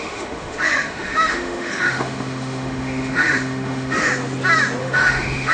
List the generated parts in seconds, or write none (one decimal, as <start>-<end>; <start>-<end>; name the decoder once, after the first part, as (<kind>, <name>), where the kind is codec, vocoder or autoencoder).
0.0-4.1 (autoencoder, DAC-VAE); 4.8-5.5